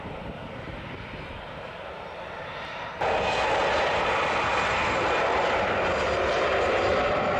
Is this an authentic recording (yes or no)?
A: yes